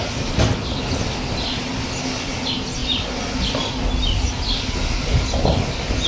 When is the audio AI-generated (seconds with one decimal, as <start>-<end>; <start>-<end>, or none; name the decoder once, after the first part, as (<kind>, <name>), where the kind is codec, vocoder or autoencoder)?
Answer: none